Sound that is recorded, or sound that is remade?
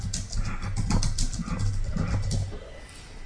recorded